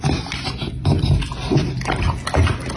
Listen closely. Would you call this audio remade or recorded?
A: recorded